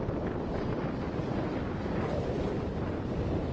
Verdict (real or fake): real